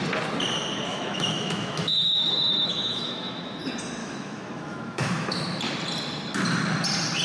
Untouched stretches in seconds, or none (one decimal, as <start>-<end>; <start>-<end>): 0.0-0.9; 3.6-4.0; 5.6-7.2